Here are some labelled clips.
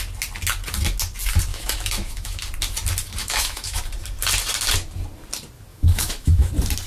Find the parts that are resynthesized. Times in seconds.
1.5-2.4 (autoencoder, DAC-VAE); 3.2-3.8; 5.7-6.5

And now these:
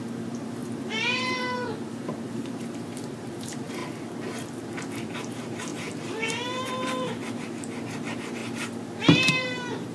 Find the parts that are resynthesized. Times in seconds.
0.0-3.8 (vocoder, BigVGAN v2); 4.6-8.4; 9.3-9.9

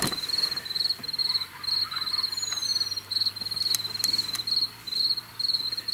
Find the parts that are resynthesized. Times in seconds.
none

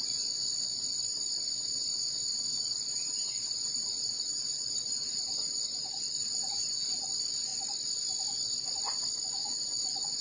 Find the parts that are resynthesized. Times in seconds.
2.3-7.1 (vocoder, Vocos); 9.4-10.2

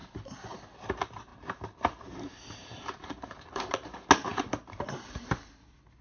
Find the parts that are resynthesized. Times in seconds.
0.0-0.6 (vocoder, BigVGAN v2); 1.3-3.7; 4.3-5.3

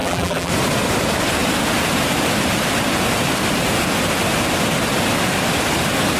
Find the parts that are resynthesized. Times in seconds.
0.0-0.5 (vocoder, BigVGAN v2)

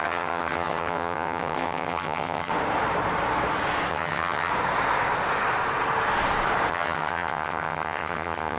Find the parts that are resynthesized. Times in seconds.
0.0-2.5 (vocoder, HiFi-GAN); 3.9-4.5; 6.7-8.6